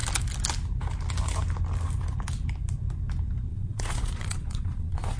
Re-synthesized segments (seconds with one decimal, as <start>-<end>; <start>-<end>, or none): 3.5-5.2